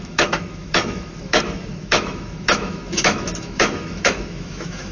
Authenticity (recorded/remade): remade